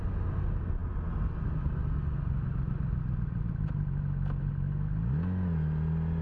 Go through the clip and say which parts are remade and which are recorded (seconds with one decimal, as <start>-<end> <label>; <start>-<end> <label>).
0.0-6.2 recorded